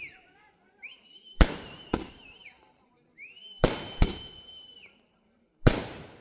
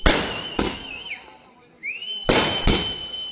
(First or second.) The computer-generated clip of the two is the first